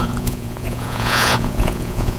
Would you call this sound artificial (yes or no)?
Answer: yes